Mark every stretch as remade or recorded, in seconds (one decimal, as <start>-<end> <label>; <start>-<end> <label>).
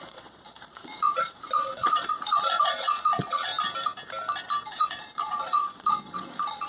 0.0-3.5 remade; 3.5-4.7 recorded; 4.7-6.7 remade